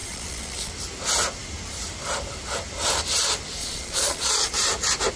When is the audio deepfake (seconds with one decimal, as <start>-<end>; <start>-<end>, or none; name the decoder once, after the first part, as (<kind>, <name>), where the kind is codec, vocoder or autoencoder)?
0.0-0.7 (vocoder, Vocos); 3.6-4.5